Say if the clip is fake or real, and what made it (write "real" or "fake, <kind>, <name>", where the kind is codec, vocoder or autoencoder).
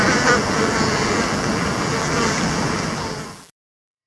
fake, vocoder, BigVGAN v2